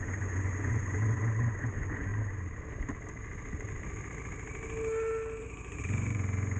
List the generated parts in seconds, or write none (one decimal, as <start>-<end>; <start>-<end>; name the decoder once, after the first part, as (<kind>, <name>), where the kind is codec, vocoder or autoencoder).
0.0-2.1 (vocoder, Vocos); 5.4-6.6